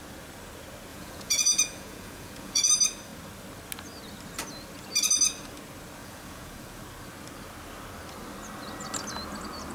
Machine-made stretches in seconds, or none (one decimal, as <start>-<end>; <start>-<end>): 0.9-2.7; 6.0-6.8